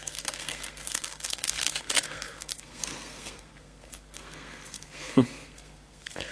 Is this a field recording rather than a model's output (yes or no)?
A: no